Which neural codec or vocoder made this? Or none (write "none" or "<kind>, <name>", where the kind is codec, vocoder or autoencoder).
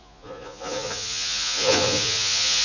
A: vocoder, Vocos